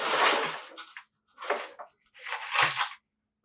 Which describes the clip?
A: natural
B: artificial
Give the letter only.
A